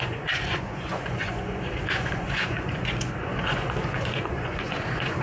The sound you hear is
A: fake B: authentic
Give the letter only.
A